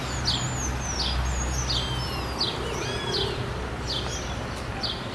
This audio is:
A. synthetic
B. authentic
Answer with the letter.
B